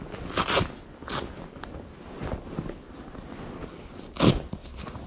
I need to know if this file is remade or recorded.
recorded